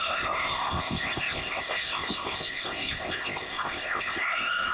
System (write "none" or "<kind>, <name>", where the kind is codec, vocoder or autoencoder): codec, ZipCodec